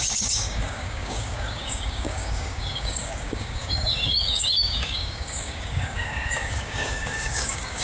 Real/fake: fake